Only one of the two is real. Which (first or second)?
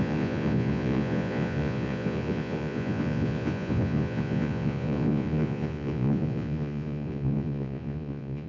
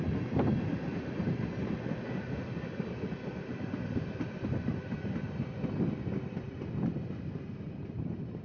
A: second